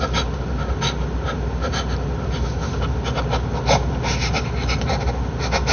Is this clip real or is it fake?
real